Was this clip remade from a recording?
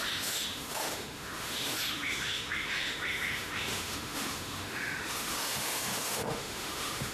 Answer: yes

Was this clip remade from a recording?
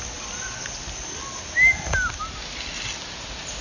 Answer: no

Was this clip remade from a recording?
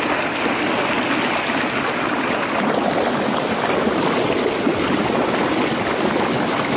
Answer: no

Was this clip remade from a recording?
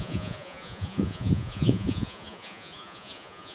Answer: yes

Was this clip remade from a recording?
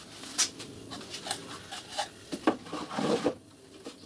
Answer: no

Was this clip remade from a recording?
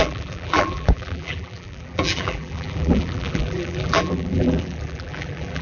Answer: yes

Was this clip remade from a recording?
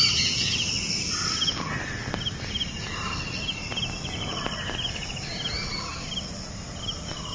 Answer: no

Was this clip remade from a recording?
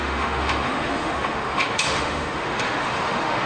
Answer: yes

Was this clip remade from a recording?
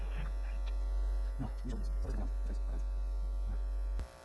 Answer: no